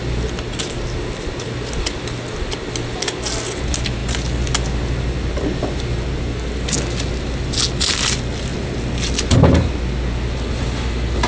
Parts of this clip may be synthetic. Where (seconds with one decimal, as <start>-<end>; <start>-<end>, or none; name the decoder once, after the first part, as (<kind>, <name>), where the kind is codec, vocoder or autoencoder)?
none